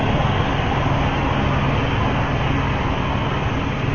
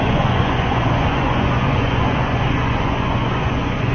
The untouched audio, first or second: first